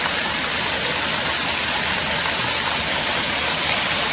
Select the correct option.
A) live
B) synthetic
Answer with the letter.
A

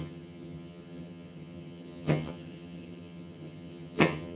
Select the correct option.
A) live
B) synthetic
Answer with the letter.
B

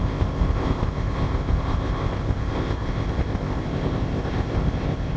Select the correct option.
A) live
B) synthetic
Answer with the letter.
B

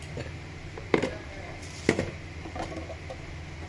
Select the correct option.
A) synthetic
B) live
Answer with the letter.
A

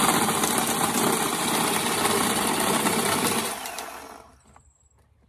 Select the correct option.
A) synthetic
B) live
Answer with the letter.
B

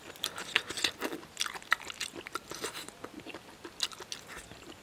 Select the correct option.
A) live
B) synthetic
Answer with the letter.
A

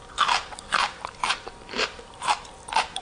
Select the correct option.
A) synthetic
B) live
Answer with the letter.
A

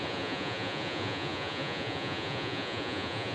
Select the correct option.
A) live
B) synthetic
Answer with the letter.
B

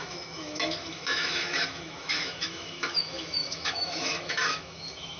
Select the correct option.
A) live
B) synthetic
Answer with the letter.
B